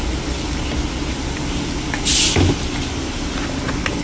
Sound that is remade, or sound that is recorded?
recorded